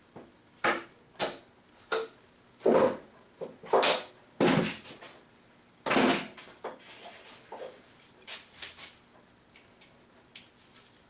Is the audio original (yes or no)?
yes